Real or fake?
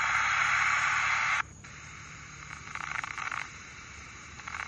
fake